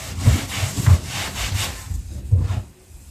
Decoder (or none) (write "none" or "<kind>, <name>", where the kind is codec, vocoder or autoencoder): vocoder, BigVGAN v2